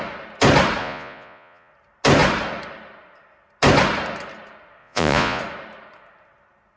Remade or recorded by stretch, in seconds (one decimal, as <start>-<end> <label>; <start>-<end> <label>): 0.0-0.8 recorded; 0.8-1.7 remade; 1.7-4.8 recorded; 4.8-5.4 remade; 5.4-6.8 recorded